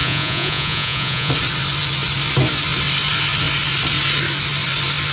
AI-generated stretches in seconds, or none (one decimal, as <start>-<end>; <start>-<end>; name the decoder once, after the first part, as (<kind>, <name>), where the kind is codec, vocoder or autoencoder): 0.0-1.3 (vocoder, Vocos)